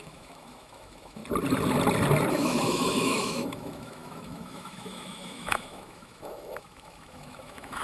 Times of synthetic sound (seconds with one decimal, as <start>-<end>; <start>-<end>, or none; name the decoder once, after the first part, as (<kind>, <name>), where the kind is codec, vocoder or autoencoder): 0.0-1.2 (autoencoder, DAC-VAE); 2.3-7.8